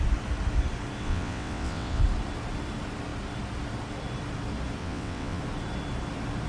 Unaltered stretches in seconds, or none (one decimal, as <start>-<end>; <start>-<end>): 0.0-1.0; 2.0-4.8; 5.4-6.5